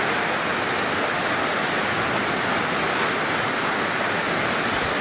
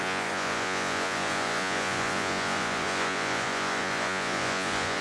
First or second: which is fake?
second